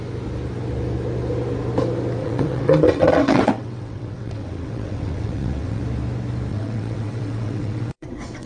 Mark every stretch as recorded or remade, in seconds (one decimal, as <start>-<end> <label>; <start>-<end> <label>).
0.0-2.2 recorded; 2.2-5.8 remade; 5.8-6.5 recorded; 6.5-8.5 remade